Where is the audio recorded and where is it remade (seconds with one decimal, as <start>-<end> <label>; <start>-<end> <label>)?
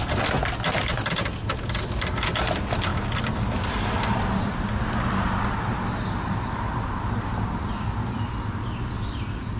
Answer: 0.0-9.6 recorded